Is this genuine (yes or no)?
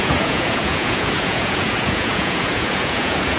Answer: no